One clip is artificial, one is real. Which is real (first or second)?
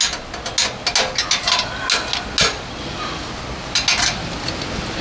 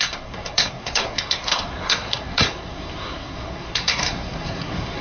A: first